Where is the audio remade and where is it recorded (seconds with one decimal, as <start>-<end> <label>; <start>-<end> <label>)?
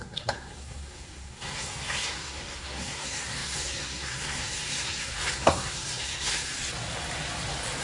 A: 0.0-6.5 remade; 6.5-7.8 recorded